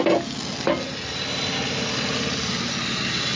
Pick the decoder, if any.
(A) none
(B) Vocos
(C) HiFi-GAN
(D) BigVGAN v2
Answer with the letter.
A